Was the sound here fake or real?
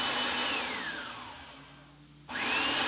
real